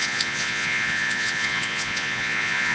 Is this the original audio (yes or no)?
no